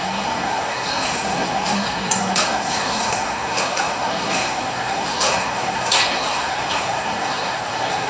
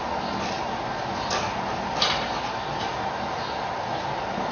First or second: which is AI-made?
first